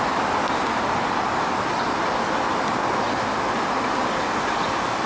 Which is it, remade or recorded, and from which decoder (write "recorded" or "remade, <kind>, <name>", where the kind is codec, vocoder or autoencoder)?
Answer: recorded